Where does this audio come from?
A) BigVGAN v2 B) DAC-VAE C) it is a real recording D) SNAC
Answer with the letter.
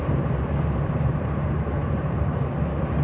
A